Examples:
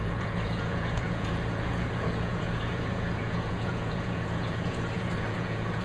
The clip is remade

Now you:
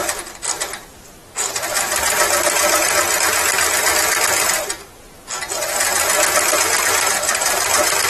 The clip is recorded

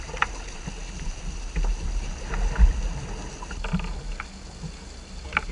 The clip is recorded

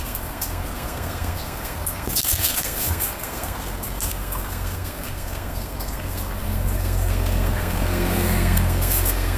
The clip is remade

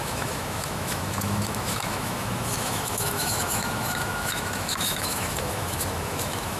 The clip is remade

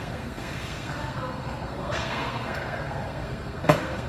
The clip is remade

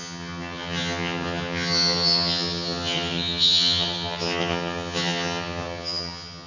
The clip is remade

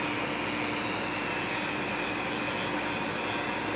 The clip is recorded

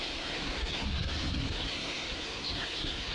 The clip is remade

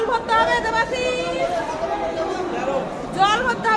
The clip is recorded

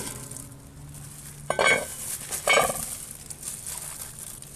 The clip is recorded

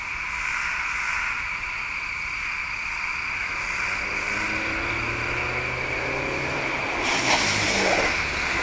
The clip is recorded